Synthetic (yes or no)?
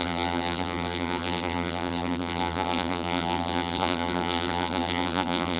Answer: yes